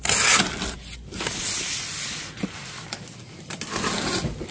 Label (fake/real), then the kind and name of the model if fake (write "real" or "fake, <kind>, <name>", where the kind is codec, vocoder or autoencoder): real